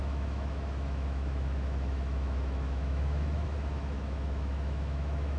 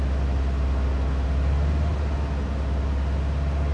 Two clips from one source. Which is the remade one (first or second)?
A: first